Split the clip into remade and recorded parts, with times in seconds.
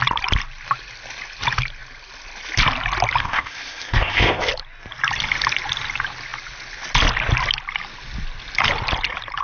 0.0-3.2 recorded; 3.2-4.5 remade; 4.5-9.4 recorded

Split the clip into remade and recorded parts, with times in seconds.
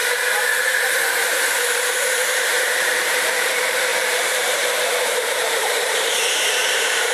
0.0-1.4 recorded; 1.4-7.1 remade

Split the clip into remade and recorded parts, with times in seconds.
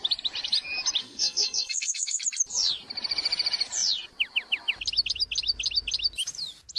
0.0-1.0 recorded; 1.0-2.2 remade; 2.2-6.8 recorded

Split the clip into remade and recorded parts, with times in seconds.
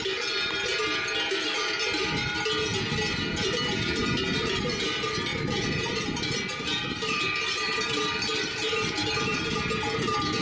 0.0-5.3 recorded; 5.3-9.4 remade; 9.4-10.4 recorded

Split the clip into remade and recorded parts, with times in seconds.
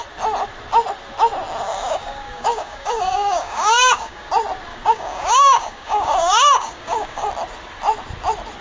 0.0-1.7 recorded; 1.7-4.3 remade; 4.3-4.7 recorded; 4.7-7.3 remade; 7.3-8.6 recorded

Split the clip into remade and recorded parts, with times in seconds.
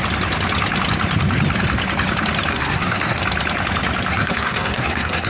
0.0-2.5 recorded; 2.5-3.2 remade; 3.2-4.1 recorded; 4.1-5.3 remade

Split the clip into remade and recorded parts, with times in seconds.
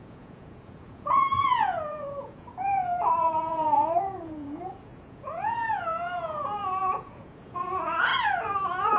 0.0-8.1 remade; 8.1-9.0 recorded